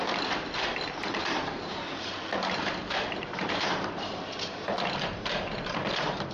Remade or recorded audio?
remade